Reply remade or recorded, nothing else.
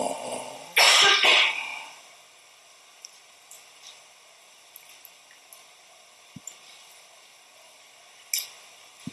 recorded